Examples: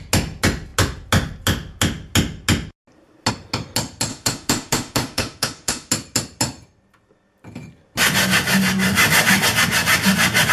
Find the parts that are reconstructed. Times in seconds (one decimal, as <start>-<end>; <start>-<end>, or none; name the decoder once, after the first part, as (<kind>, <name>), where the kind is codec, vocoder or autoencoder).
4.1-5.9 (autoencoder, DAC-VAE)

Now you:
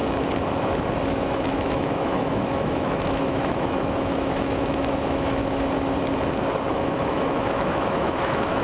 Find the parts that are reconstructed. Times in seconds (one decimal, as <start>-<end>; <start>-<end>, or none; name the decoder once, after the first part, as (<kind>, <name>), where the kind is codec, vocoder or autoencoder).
1.0-5.4 (autoencoder, DAC-VAE); 6.7-8.6

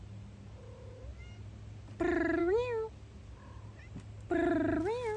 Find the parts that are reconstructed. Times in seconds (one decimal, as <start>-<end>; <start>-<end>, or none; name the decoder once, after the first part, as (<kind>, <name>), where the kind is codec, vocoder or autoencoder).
none

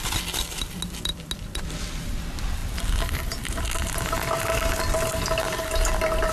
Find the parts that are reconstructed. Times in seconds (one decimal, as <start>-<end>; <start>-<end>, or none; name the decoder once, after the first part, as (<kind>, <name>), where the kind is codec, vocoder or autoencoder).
none